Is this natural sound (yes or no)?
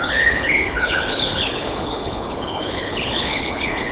no